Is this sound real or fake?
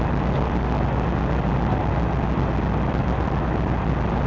real